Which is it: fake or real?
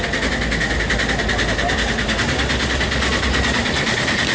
real